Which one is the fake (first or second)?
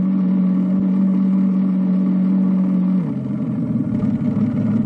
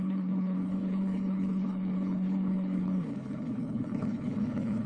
second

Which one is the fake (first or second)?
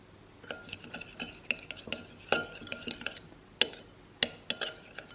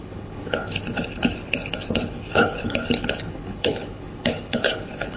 second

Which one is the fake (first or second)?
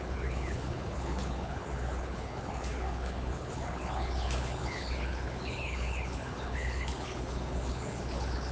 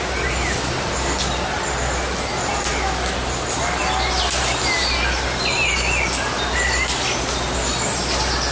first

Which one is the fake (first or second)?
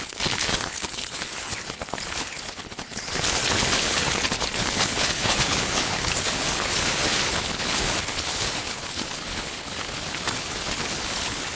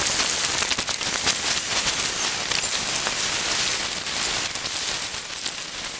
first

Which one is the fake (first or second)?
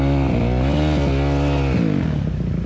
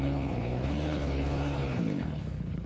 second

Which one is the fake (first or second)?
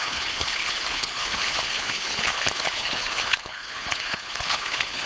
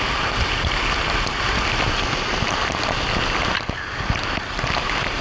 first